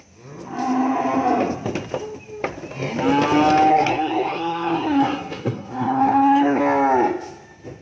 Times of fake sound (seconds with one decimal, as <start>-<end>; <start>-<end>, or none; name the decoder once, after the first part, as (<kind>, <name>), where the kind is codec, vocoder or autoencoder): 3.7-6.6 (codec, SNAC)